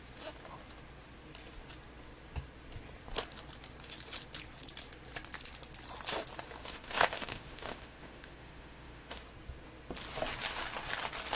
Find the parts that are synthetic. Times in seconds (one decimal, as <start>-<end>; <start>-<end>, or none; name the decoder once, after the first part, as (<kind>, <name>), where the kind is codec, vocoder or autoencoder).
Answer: 6.6-9.2 (autoencoder, DAC-VAE)

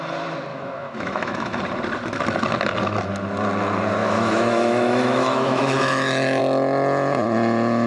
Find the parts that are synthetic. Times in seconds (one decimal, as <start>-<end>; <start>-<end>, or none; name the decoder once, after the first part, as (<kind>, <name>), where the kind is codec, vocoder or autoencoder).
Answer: 0.5-1.6 (autoencoder, DAC-VAE); 4.0-6.4

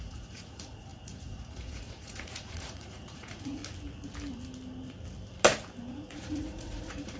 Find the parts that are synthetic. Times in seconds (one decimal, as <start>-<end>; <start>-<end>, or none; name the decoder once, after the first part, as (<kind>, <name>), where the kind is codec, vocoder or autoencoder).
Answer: 0.0-3.6 (vocoder, Vocos); 5.9-7.2

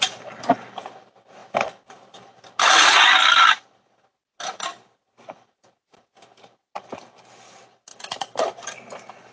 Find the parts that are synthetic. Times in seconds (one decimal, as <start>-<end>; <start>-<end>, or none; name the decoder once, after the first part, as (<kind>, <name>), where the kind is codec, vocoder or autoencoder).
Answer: none

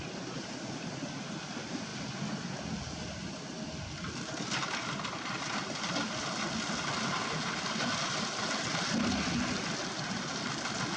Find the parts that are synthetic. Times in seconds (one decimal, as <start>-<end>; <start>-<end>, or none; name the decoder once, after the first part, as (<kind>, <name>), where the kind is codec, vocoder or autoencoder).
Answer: none

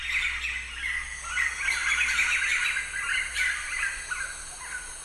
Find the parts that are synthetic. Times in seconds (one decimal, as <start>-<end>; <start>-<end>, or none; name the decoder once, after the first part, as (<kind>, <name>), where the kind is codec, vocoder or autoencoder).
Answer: none